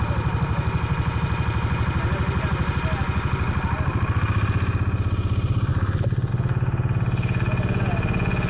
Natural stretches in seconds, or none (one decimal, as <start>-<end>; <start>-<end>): 0.0-8.5